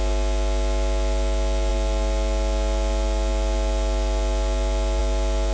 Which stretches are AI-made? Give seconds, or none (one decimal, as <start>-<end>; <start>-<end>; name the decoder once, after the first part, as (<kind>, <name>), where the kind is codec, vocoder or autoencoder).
none